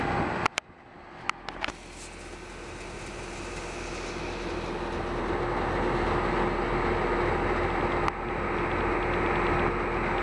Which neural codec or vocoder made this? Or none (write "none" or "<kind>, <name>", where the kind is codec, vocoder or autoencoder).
none